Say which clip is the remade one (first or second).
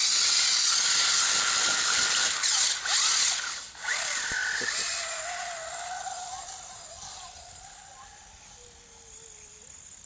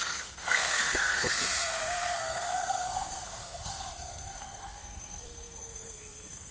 second